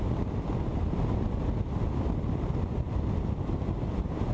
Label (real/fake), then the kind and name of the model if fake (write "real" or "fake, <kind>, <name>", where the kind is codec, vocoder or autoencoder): real